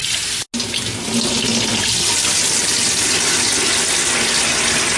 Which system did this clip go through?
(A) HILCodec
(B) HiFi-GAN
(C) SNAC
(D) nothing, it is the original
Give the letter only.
D